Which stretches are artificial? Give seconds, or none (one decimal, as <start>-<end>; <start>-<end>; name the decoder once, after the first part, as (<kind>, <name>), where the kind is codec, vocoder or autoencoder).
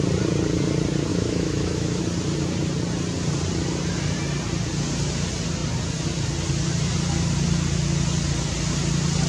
1.1-2.0 (autoencoder, DAC-VAE)